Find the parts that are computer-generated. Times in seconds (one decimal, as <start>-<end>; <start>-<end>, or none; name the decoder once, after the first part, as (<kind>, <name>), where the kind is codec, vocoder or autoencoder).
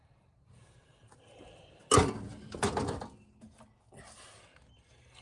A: none